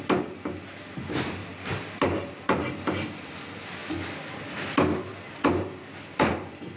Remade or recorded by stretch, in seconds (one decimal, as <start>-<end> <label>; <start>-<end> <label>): 0.0-1.4 recorded; 1.4-3.3 remade; 3.3-6.8 recorded